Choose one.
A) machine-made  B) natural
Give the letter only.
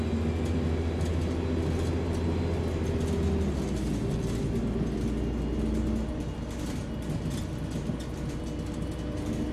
B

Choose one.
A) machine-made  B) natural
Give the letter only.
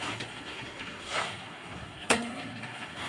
A